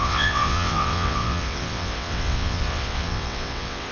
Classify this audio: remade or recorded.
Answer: remade